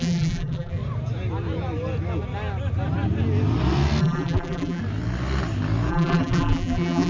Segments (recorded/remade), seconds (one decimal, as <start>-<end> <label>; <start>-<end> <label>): 0.0-0.8 remade; 0.8-4.0 recorded; 4.0-4.8 remade; 4.8-5.9 recorded; 5.9-7.1 remade